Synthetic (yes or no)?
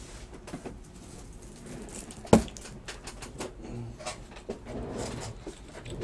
no